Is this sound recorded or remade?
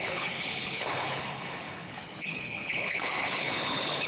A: remade